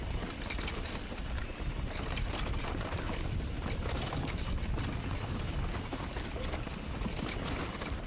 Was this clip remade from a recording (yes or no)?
no